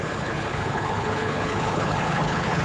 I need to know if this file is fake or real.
fake